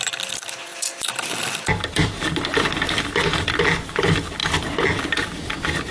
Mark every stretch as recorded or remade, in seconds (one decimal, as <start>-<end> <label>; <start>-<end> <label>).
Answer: 0.0-5.9 recorded

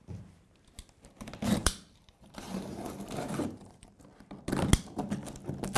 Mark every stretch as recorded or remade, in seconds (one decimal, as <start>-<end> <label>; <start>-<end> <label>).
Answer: 0.0-1.6 recorded; 1.6-4.0 remade; 4.0-5.8 recorded